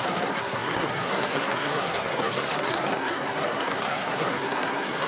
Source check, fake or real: fake